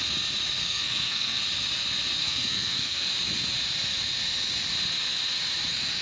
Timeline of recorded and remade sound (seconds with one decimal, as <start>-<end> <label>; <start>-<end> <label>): 0.0-0.6 recorded; 0.6-1.4 remade; 1.4-2.2 recorded; 2.2-3.1 remade; 3.1-6.0 recorded